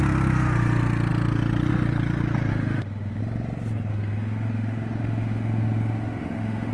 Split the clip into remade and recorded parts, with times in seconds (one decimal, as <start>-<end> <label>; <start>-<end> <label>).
0.0-2.5 recorded; 2.5-3.2 remade; 3.2-3.9 recorded; 3.9-6.7 remade

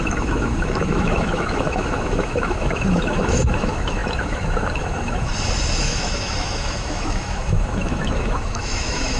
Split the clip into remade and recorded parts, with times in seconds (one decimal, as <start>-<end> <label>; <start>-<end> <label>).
0.0-5.3 remade; 5.3-5.8 recorded; 5.8-9.2 remade

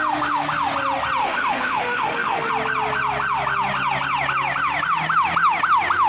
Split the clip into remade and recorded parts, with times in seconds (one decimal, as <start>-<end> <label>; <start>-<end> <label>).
0.0-1.2 recorded; 1.2-2.5 remade; 2.5-6.1 recorded

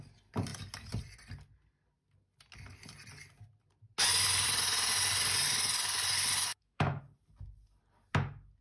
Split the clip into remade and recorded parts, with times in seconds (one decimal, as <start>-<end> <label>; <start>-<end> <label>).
0.0-6.5 recorded; 6.5-7.0 remade; 7.0-8.6 recorded

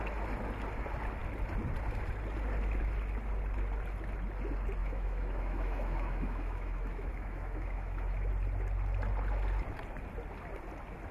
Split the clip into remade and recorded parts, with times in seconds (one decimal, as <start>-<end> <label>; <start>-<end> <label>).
0.0-4.8 recorded; 4.8-8.3 remade; 8.3-11.1 recorded

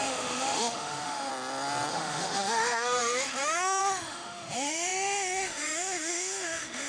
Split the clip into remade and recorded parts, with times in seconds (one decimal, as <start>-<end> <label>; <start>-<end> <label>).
0.0-1.3 remade; 1.3-1.9 recorded; 1.9-6.9 remade

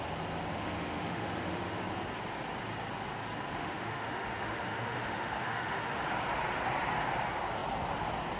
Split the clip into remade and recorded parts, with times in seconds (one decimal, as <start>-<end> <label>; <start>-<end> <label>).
0.0-0.5 recorded; 0.5-1.8 remade; 1.8-3.6 recorded; 3.6-6.0 remade; 6.0-8.4 recorded

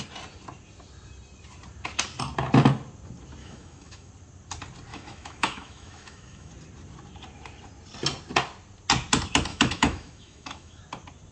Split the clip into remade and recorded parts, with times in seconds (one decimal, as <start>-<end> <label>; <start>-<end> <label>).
0.0-3.4 recorded; 3.4-4.1 remade; 4.1-4.9 recorded; 4.9-6.5 remade; 6.5-9.5 recorded; 9.5-10.8 remade; 10.8-11.3 recorded